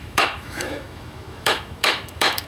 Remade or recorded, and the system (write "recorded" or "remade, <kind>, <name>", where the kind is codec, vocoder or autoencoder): remade, autoencoder, DAC-VAE